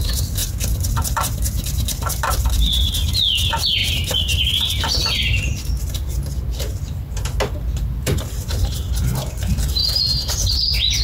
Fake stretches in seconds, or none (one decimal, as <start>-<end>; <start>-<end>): none